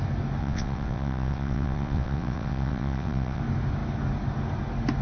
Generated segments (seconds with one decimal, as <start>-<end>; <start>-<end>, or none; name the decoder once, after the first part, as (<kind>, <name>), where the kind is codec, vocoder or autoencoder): 0.4-3.4 (vocoder, WaveNeXt)